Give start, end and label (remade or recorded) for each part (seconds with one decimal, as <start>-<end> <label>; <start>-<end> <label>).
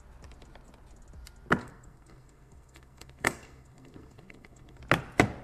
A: 0.0-1.6 recorded; 1.6-4.8 remade; 4.8-5.4 recorded